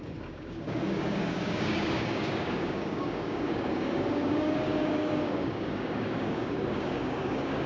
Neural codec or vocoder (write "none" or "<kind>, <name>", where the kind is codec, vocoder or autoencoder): codec, DAC